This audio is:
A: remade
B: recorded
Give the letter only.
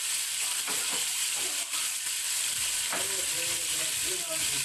B